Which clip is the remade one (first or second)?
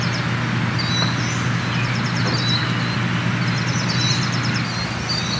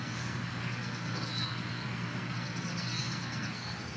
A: second